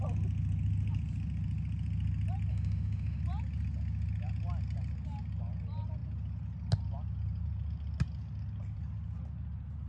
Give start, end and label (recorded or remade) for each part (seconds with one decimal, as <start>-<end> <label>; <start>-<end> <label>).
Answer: 0.0-2.5 recorded; 2.5-3.2 remade; 3.2-9.9 recorded